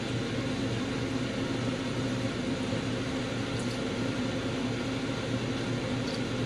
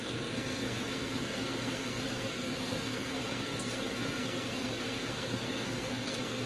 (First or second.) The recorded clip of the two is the first